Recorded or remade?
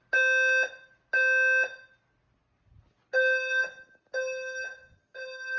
recorded